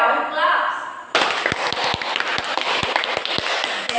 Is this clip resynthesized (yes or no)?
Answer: no